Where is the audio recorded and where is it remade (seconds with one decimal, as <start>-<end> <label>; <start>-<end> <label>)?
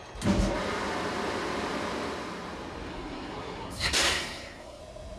0.0-2.9 recorded; 2.9-4.8 remade; 4.8-5.2 recorded